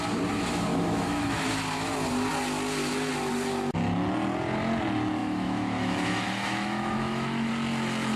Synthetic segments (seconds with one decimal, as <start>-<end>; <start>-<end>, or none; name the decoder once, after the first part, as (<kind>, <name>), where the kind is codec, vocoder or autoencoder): 0.7-1.5 (autoencoder, DAC-VAE); 5.2-7.5